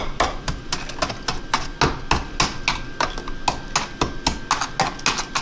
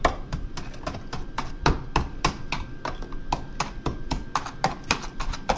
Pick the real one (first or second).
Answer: first